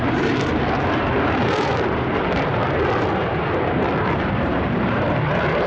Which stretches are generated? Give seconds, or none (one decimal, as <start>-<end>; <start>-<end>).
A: 0.0-0.5; 1.1-2.6; 4.2-5.7